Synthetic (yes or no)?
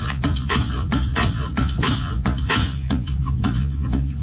yes